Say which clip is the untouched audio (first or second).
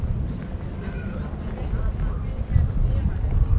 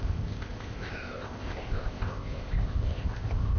first